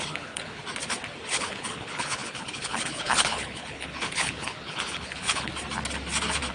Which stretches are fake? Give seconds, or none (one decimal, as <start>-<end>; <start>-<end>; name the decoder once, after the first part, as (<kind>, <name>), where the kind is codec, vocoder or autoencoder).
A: 0.0-0.6 (codec, HILCodec); 1.3-5.5